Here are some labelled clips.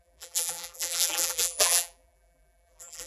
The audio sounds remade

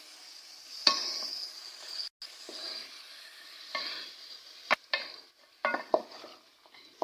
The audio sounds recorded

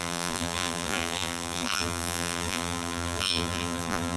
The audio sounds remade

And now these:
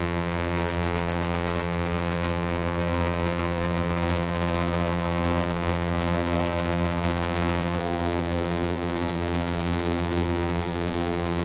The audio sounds remade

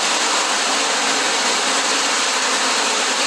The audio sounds recorded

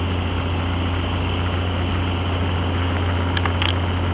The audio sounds recorded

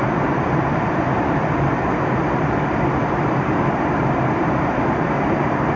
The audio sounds remade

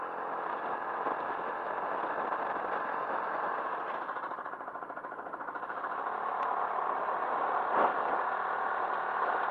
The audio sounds recorded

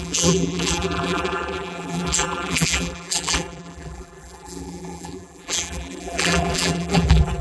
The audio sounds remade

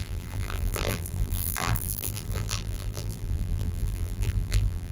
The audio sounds remade